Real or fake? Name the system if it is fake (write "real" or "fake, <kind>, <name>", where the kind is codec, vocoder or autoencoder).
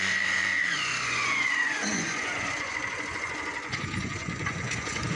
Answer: fake, vocoder, Vocos